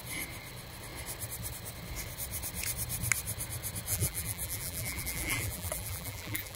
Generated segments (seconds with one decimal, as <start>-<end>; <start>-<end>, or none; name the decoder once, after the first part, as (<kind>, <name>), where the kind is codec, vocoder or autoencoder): 3.9-6.6 (vocoder, BigVGAN v2)